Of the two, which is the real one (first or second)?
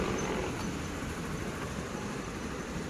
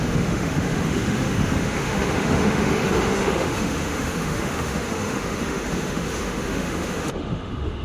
first